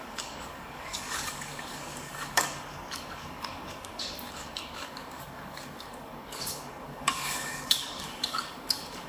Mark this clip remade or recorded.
remade